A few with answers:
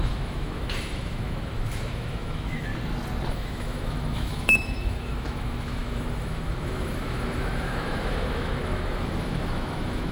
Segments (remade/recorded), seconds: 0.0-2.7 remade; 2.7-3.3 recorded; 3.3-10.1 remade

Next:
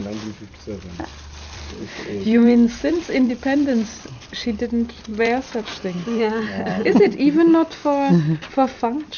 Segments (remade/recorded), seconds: 0.0-0.6 remade; 0.6-1.1 recorded; 1.1-3.3 remade; 3.3-5.1 recorded; 5.1-7.1 remade; 7.1-9.2 recorded

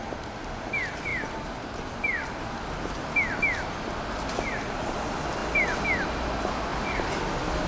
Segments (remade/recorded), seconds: 0.0-6.7 recorded; 6.7-7.2 remade; 7.2-7.7 recorded

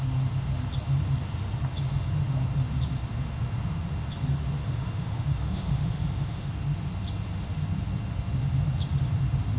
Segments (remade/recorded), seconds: 0.0-4.6 recorded; 4.6-6.5 remade; 6.5-9.6 recorded

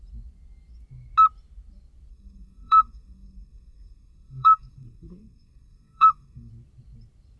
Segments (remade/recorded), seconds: 0.0-2.1 recorded; 2.1-6.5 remade; 6.5-7.4 recorded